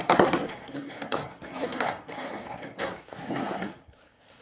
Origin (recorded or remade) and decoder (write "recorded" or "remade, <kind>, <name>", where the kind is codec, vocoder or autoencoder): remade, codec, SNAC